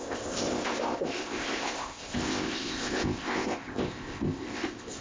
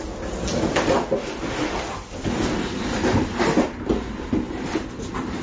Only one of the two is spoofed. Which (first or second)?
first